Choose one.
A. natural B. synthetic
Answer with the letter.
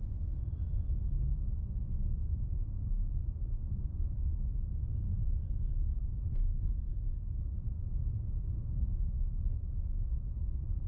B